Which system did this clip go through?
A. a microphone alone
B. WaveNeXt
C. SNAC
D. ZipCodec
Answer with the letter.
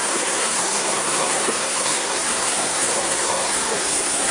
C